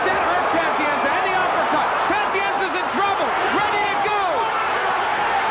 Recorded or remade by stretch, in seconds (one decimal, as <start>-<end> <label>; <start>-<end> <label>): 0.0-5.5 recorded